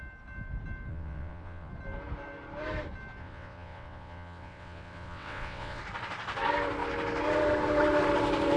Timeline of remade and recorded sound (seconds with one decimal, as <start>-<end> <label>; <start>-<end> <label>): 0.0-0.9 recorded; 0.9-1.7 remade; 1.7-3.2 recorded; 3.2-5.8 remade; 5.8-8.6 recorded